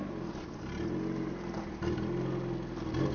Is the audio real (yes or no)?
yes